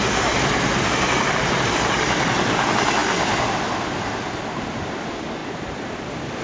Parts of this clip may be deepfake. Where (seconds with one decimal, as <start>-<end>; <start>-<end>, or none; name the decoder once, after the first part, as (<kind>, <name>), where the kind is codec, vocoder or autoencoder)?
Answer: none